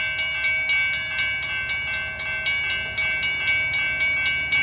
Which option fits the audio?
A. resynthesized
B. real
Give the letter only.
B